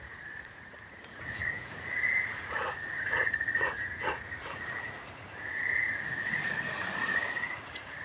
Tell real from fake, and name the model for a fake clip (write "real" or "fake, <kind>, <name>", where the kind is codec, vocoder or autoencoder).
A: fake, vocoder, Vocos